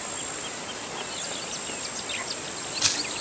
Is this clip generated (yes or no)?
no